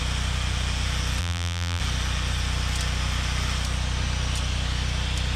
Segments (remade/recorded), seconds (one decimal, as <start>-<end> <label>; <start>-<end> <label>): 0.0-1.2 recorded; 1.2-1.8 remade; 1.8-5.4 recorded